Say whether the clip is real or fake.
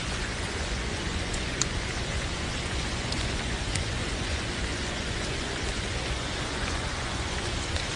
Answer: fake